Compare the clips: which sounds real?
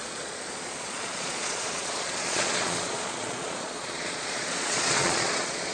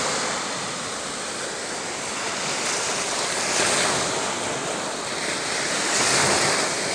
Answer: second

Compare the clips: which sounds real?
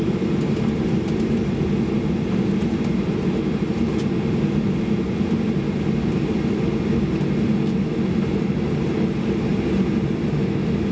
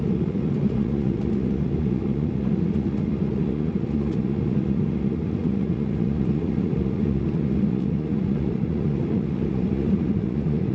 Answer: first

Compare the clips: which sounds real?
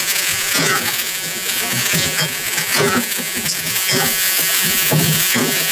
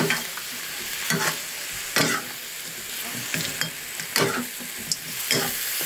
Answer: second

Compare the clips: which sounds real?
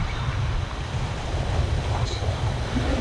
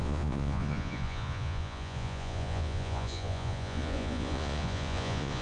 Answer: first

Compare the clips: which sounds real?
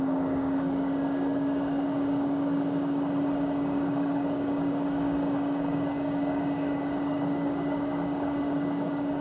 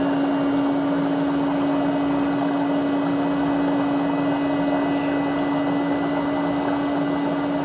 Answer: second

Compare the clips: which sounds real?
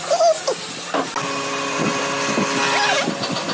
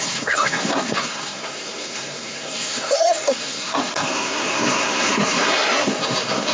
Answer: first